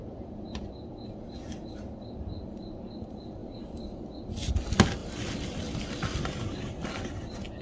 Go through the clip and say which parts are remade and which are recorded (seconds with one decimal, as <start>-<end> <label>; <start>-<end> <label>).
0.0-0.5 remade; 0.5-7.6 recorded